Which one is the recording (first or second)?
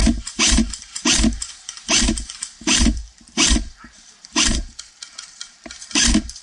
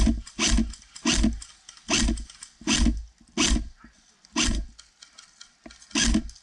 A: second